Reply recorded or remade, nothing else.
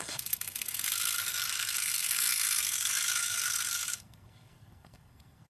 remade